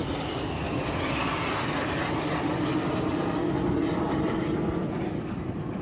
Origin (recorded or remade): recorded